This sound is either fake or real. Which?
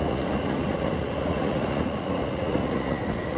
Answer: fake